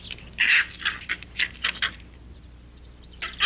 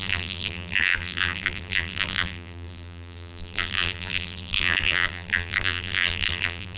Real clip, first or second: first